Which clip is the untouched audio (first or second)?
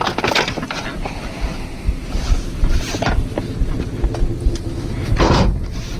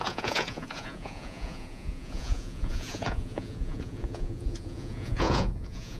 first